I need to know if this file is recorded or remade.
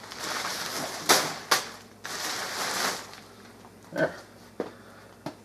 recorded